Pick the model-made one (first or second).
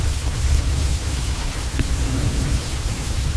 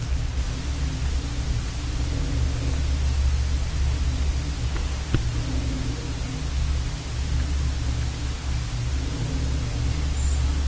first